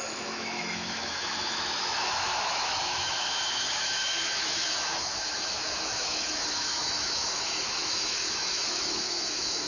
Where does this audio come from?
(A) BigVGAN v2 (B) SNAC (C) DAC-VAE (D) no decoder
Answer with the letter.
C